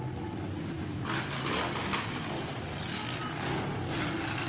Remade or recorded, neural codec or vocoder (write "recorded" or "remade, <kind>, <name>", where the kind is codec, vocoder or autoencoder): recorded